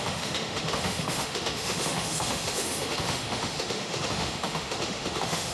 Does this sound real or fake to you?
fake